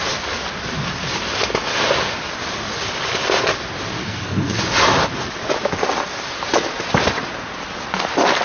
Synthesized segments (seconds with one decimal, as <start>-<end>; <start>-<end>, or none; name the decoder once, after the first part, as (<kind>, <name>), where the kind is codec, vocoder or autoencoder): 4.0-4.6 (codec, SNAC)